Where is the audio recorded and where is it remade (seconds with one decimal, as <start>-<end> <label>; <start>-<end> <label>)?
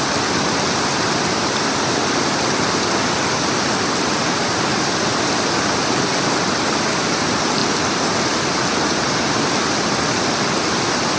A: 0.0-11.2 recorded